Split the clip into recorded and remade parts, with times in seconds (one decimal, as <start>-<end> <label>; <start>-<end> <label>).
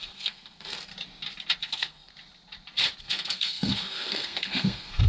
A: 0.0-0.9 remade; 0.9-1.6 recorded; 1.6-2.1 remade; 2.1-3.0 recorded; 3.0-5.1 remade